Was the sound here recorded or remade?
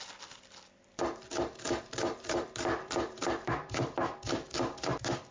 remade